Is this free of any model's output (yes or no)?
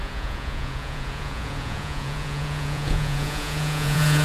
no